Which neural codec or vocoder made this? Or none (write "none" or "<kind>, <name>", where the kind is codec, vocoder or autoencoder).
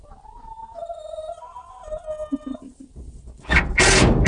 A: none